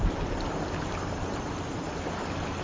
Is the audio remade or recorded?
recorded